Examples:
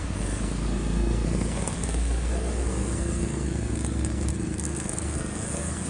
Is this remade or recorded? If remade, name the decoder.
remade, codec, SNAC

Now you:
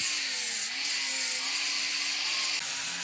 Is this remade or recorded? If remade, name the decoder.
recorded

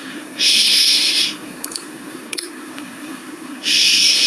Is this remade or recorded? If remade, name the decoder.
remade, codec, SNAC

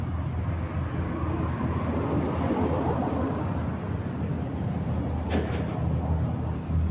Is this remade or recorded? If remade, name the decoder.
recorded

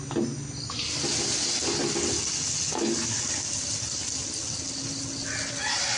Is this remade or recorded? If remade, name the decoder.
recorded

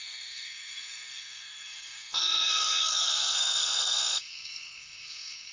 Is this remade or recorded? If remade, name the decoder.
remade, codec, SNAC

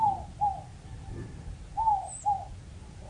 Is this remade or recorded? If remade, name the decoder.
recorded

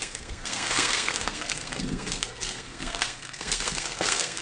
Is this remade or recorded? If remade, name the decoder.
remade, codec, SNAC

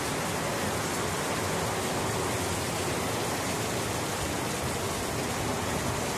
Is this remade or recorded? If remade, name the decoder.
recorded